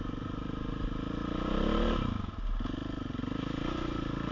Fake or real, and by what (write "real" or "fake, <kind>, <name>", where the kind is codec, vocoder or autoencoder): real